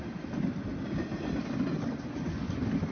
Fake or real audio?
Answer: real